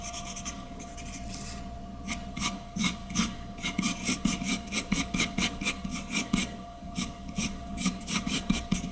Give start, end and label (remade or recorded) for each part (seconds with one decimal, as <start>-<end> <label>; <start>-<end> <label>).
0.0-0.9 remade; 0.9-2.3 recorded; 2.3-8.9 remade